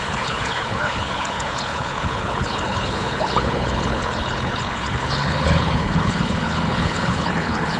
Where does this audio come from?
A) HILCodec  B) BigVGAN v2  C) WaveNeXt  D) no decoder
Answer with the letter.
A